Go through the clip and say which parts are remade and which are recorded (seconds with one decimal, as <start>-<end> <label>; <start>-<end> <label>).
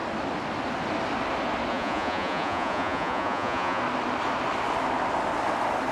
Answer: 0.0-1.7 recorded; 1.7-3.8 remade; 3.8-5.9 recorded